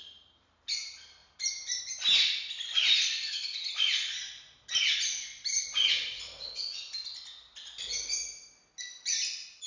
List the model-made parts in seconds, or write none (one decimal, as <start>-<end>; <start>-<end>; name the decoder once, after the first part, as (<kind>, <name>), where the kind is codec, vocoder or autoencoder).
1.2-1.8 (vocoder, BigVGAN v2)

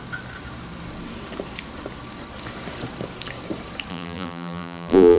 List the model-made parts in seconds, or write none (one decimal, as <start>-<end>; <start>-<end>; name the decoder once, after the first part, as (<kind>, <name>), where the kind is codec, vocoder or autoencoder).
3.9-5.2 (vocoder, BigVGAN v2)

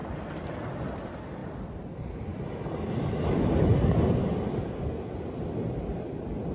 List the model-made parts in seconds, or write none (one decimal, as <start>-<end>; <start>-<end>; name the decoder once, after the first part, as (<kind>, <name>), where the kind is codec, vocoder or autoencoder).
0.0-0.8 (vocoder, BigVGAN v2)

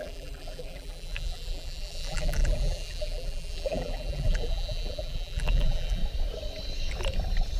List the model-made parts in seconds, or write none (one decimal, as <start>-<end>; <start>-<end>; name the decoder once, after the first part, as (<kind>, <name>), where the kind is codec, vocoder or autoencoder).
0.0-6.0 (vocoder, BigVGAN v2)

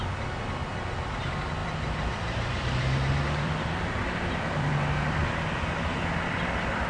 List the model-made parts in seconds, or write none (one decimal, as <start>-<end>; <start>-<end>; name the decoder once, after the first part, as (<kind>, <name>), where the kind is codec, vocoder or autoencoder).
0.0-0.7 (vocoder, BigVGAN v2); 1.6-4.7; 5.2-5.7

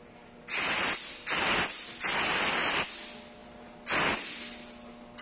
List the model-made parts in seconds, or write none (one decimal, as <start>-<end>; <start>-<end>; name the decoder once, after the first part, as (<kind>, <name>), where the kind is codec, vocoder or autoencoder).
none